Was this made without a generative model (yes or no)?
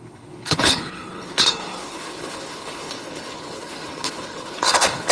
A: no